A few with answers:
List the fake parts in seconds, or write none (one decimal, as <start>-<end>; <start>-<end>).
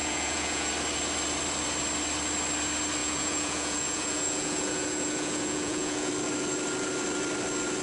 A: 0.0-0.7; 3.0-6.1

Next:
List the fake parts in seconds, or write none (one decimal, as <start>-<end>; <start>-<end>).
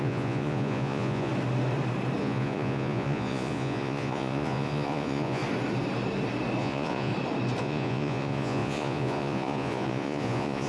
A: 0.0-1.3; 2.2-5.4; 6.6-7.1; 7.6-10.7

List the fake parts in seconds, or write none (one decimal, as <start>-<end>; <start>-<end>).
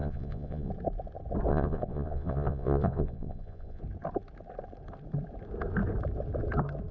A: 0.0-0.7; 1.5-3.8